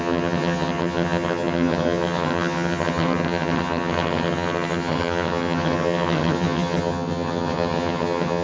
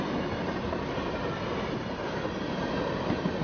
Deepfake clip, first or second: first